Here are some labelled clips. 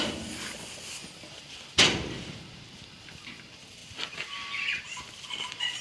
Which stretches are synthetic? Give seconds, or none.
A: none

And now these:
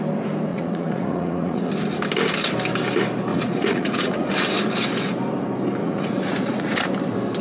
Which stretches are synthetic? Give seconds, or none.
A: 0.5-1.7 (vocoder, Vocos); 3.3-4.3; 5.8-6.9

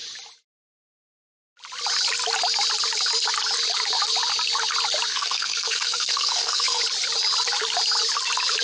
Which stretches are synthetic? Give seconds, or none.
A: 5.1-6.8 (codec, SNAC)